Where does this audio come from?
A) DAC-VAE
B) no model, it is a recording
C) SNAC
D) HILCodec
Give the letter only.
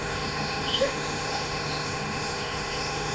A